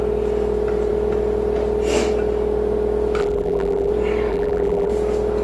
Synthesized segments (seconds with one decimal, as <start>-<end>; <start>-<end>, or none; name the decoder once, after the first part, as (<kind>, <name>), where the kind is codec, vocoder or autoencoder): 3.2-3.9 (vocoder, BigVGAN v2); 4.3-4.9